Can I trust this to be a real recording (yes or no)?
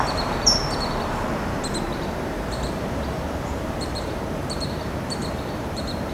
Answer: no